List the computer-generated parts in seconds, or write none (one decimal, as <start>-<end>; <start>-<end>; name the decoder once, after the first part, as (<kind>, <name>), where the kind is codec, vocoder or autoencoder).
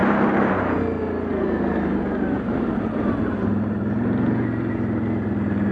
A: 0.0-0.8 (vocoder, BigVGAN v2); 1.3-4.7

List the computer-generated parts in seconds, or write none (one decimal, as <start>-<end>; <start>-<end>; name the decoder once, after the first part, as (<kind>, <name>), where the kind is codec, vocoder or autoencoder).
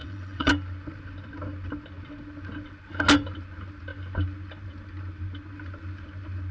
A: 0.0-0.5 (vocoder, WaveNeXt)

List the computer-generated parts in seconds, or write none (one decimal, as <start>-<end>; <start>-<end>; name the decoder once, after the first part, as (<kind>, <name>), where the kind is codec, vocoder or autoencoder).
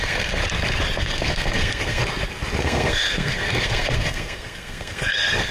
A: 0.0-0.4 (codec, SNAC); 1.0-2.0; 2.6-5.5